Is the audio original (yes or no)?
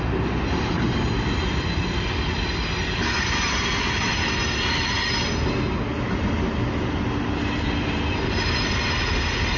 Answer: yes